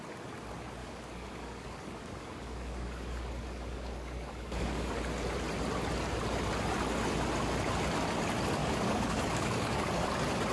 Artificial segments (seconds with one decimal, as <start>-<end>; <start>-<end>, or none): 0.8-5.0; 8.6-10.1